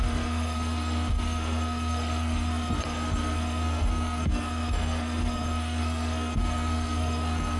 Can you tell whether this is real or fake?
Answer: fake